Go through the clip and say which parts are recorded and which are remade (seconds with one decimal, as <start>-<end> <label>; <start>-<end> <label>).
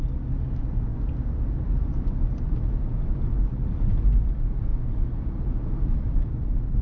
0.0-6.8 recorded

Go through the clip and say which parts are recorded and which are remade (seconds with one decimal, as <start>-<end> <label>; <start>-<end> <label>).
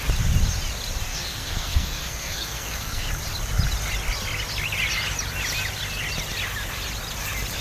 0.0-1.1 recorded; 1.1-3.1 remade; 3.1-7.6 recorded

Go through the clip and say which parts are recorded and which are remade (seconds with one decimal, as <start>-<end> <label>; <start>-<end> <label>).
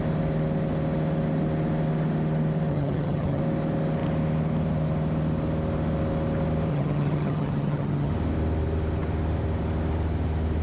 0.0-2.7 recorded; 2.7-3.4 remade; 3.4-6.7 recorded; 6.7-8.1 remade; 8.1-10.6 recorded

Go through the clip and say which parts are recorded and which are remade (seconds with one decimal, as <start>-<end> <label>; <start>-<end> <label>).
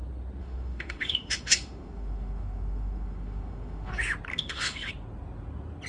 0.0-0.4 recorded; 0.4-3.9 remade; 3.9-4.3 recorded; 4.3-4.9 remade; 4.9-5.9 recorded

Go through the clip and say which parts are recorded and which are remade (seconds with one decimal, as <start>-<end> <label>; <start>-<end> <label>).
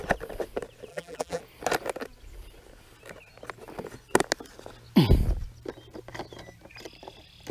0.0-0.9 recorded; 0.9-1.4 remade; 1.4-7.5 recorded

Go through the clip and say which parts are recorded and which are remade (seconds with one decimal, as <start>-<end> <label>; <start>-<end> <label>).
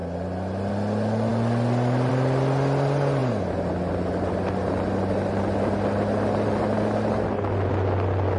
0.0-8.4 recorded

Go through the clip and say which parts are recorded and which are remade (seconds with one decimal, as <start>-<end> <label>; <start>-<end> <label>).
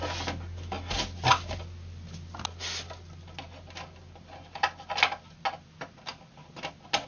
0.0-7.1 recorded